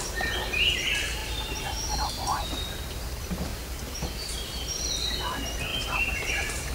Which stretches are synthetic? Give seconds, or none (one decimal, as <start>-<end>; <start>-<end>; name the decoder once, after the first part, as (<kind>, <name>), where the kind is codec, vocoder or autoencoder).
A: 1.2-2.1 (vocoder, BigVGAN v2); 3.5-4.9; 5.7-6.7